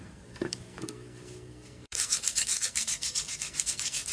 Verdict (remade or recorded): remade